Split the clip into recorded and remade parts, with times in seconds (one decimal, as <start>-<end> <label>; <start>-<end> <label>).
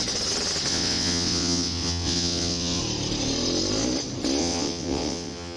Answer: 0.0-0.7 recorded; 0.7-2.8 remade; 2.8-4.4 recorded; 4.4-5.6 remade